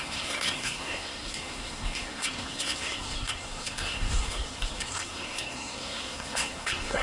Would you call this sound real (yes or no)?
no